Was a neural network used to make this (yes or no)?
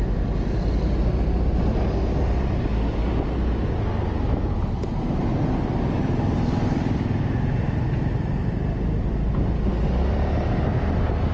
no